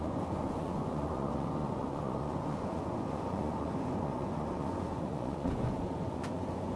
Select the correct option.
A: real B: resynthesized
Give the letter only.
B